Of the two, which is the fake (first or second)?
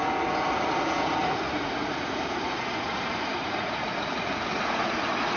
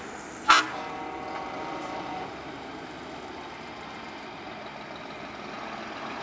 first